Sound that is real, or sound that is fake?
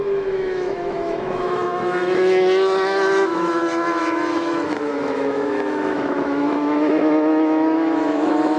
fake